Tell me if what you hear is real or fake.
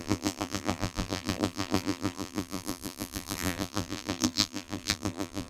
fake